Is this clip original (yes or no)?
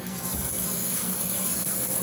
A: no